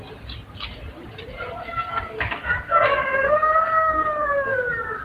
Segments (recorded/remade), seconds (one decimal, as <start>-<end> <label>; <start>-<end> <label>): 0.0-1.6 recorded; 1.6-4.6 remade; 4.6-5.0 recorded